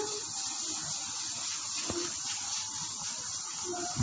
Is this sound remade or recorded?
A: recorded